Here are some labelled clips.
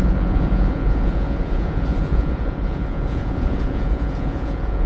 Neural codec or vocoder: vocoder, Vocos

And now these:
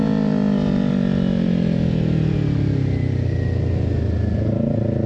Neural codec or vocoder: none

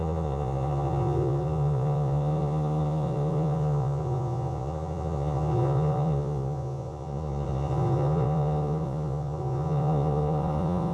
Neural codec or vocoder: vocoder, Vocos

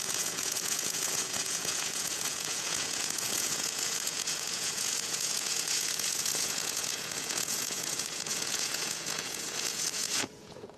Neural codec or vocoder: vocoder, Vocos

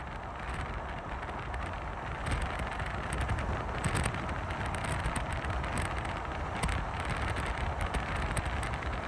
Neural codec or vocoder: none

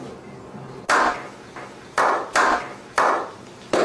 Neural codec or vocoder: none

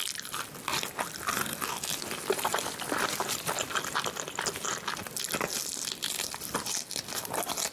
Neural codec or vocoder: none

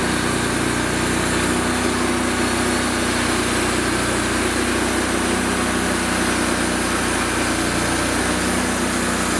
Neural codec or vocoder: none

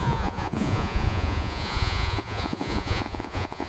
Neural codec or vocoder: vocoder, Vocos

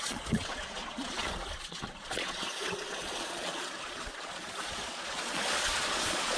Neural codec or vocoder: vocoder, Vocos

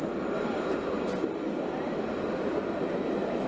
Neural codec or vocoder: none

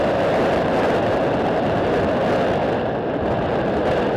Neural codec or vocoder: none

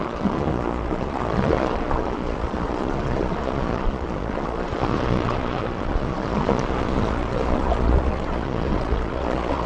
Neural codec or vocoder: vocoder, Vocos